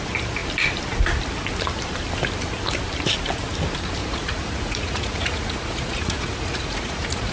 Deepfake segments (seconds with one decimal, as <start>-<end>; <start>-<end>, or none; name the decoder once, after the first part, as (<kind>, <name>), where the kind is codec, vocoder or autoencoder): 4.0-7.3 (vocoder, Vocos)